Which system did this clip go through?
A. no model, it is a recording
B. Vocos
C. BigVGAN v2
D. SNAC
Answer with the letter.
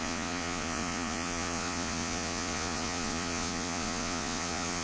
B